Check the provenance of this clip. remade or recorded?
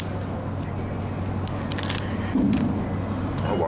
recorded